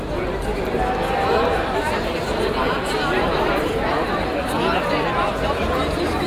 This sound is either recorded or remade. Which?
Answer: recorded